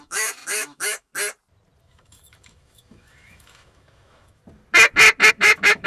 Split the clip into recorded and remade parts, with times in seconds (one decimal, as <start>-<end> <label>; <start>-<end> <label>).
0.0-1.1 remade; 1.1-1.8 recorded; 1.8-4.4 remade; 4.4-5.3 recorded; 5.3-5.9 remade